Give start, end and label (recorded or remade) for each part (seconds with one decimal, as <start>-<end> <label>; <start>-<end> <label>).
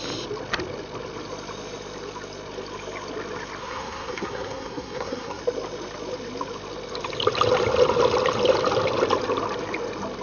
0.0-3.6 recorded; 3.6-5.4 remade; 5.4-10.2 recorded